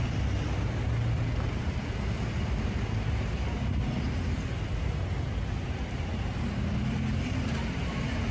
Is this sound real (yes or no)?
yes